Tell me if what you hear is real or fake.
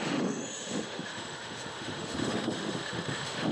fake